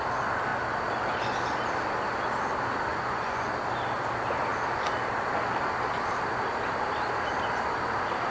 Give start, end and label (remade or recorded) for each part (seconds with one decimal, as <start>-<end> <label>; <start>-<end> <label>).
0.0-2.9 recorded; 2.9-3.5 remade; 3.5-8.3 recorded